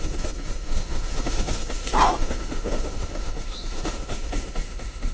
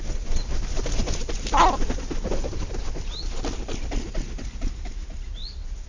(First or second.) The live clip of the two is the second